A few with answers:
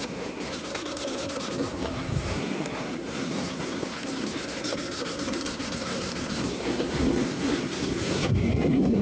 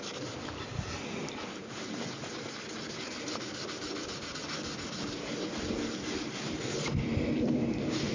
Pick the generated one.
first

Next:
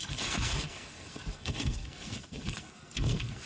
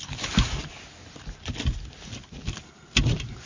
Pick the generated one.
first